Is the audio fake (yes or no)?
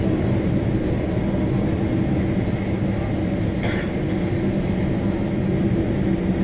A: no